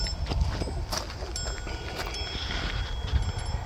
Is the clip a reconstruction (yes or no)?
no